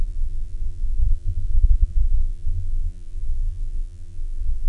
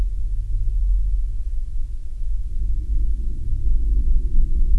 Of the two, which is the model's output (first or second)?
first